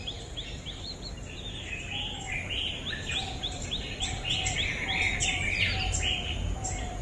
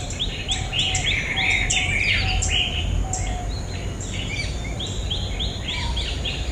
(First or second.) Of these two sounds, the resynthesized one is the first